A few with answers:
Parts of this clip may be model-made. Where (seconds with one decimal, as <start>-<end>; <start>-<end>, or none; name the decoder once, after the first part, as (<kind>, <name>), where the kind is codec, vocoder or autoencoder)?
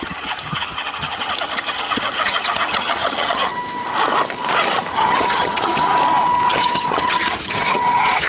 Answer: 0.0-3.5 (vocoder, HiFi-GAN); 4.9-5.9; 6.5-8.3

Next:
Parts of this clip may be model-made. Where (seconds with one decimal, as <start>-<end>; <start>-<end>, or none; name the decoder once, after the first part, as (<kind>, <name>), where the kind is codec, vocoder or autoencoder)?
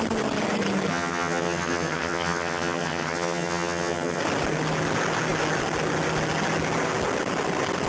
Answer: 0.9-4.2 (vocoder, HiFi-GAN)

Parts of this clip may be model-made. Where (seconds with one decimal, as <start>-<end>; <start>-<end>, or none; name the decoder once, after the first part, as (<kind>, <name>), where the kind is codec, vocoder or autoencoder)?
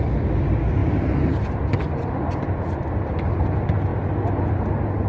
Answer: none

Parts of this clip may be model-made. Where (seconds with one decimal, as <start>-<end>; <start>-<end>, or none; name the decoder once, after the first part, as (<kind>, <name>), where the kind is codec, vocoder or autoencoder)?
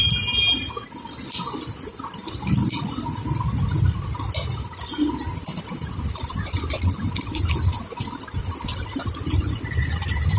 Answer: none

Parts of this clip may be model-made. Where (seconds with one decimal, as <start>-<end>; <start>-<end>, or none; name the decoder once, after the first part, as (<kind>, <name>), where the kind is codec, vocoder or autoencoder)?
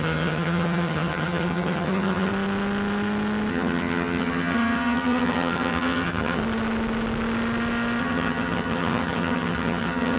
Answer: 0.0-2.3 (vocoder, HiFi-GAN); 3.5-6.4; 8.0-10.2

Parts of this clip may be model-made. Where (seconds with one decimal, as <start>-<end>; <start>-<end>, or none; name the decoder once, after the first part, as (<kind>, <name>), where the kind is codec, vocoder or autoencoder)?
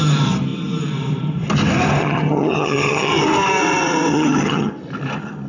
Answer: 2.0-3.1 (vocoder, HiFi-GAN); 4.1-4.7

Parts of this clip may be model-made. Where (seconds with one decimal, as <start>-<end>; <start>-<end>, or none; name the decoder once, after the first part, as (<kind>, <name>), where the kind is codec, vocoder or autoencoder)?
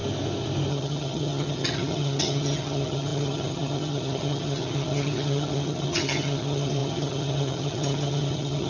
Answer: 0.7-8.7 (vocoder, HiFi-GAN)